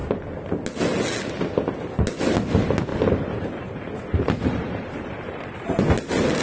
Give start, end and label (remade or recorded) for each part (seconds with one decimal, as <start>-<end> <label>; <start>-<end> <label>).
0.0-2.9 recorded; 2.9-5.8 remade; 5.8-6.4 recorded